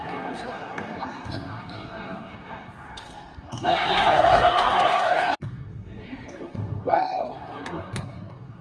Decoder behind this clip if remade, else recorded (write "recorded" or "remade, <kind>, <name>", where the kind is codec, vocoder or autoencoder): remade, codec, SNAC